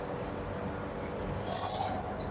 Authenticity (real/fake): real